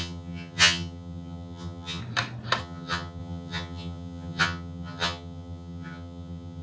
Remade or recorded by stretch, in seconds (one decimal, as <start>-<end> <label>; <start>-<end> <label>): 0.0-2.0 remade; 2.0-2.6 recorded; 2.6-6.6 remade